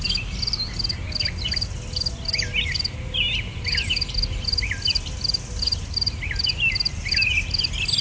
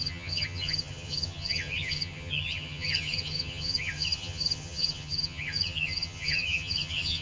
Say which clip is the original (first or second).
first